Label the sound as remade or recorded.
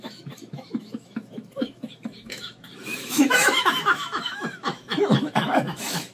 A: remade